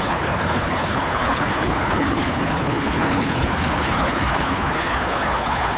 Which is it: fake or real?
fake